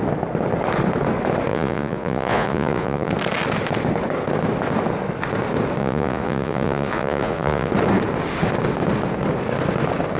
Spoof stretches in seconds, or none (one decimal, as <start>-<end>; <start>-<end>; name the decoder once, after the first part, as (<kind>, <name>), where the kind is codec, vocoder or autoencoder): 1.5-3.1 (vocoder, Vocos); 5.8-7.7